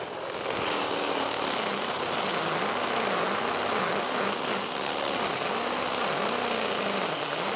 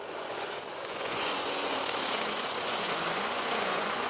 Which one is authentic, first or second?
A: first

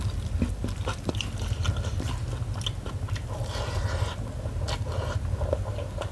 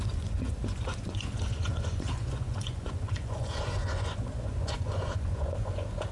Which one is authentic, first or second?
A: first